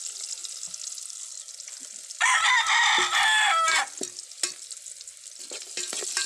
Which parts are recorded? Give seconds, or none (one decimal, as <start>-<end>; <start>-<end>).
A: 0.0-6.3